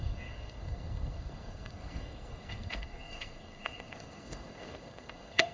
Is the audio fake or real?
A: fake